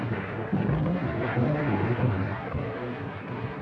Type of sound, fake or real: fake